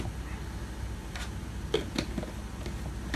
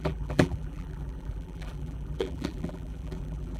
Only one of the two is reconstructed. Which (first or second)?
second